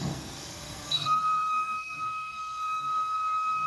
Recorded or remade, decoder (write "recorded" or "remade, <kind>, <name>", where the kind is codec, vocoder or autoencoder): remade, codec, SNAC